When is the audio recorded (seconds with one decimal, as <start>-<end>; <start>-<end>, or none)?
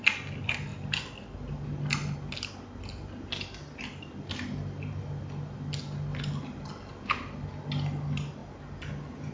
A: 0.0-9.3